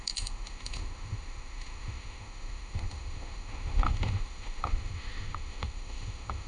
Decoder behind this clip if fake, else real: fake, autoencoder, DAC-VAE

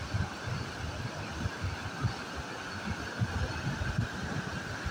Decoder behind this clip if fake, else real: real